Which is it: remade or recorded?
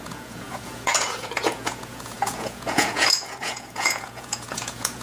remade